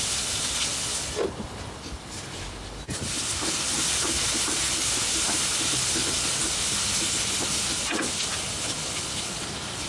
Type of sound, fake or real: real